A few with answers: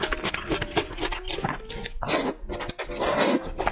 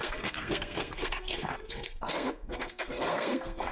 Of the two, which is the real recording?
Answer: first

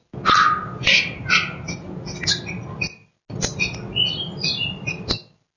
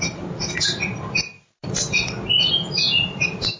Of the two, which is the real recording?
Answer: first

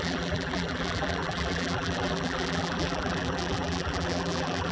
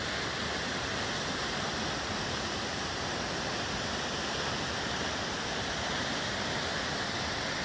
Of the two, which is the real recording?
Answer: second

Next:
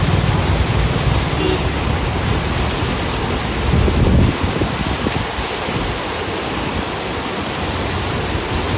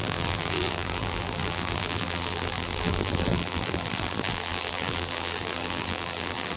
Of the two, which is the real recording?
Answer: first